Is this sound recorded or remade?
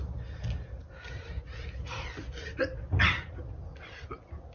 recorded